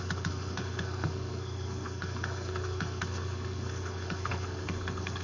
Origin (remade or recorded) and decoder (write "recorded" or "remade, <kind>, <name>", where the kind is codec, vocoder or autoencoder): remade, codec, SNAC